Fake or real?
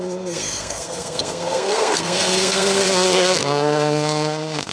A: fake